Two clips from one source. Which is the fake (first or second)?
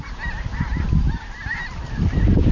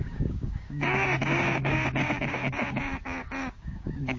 second